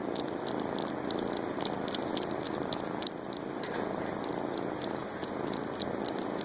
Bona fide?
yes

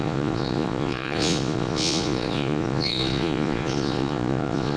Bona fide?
no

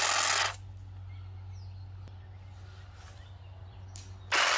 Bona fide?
yes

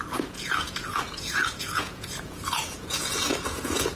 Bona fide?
no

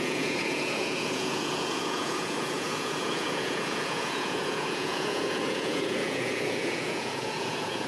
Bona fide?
no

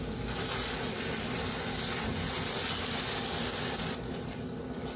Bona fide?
yes